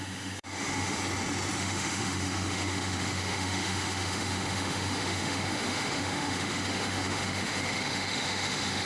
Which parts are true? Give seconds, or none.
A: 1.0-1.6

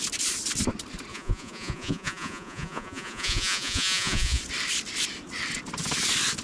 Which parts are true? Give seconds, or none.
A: 0.0-1.1; 4.4-6.4

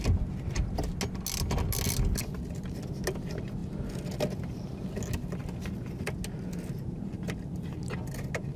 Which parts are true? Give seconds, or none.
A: 0.0-8.6

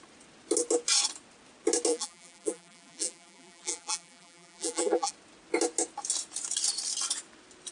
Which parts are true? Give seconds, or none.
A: 0.0-1.9; 5.1-7.7

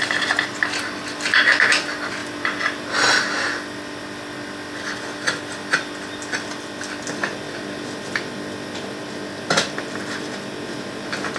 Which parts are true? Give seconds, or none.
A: 0.0-11.4

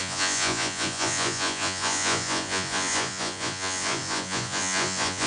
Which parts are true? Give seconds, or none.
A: none

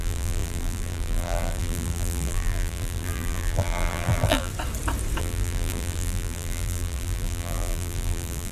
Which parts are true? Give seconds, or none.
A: 4.5-5.2